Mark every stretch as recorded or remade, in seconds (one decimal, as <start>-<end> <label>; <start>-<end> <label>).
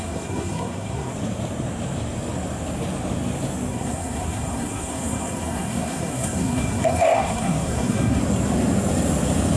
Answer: 0.0-1.1 remade; 1.1-3.7 recorded; 3.7-8.2 remade; 8.2-9.6 recorded